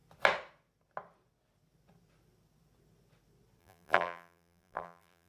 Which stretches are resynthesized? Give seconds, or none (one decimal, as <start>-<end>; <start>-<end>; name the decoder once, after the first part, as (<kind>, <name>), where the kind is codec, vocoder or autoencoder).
3.6-5.3 (vocoder, BigVGAN v2)